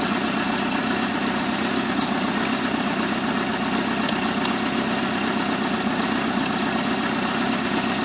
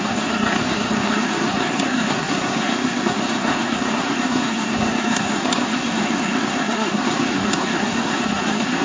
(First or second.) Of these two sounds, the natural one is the first